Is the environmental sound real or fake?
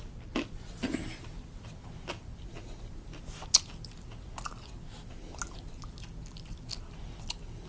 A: real